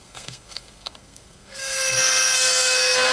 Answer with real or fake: fake